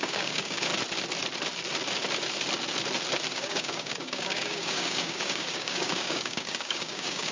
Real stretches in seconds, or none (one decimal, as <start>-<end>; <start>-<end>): 0.7-3.3